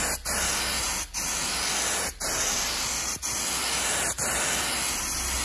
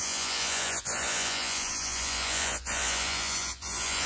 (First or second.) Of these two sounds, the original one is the first